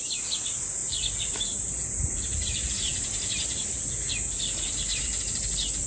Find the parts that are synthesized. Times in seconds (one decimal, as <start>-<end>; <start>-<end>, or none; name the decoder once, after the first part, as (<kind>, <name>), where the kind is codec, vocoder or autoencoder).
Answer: none